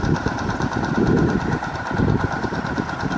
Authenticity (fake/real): fake